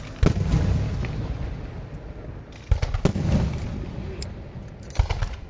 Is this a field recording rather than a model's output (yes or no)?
yes